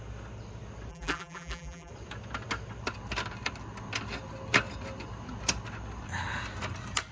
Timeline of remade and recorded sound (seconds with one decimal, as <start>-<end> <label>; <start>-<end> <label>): 0.0-0.9 recorded; 0.9-1.9 remade; 1.9-7.1 recorded